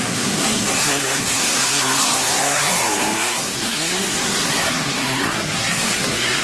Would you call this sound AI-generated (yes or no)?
yes